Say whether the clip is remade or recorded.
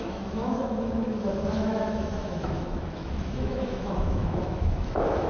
remade